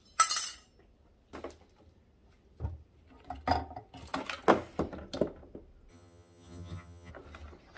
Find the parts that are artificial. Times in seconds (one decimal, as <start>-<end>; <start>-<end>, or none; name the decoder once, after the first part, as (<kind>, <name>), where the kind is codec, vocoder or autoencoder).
5.9-7.1 (vocoder, HiFi-GAN)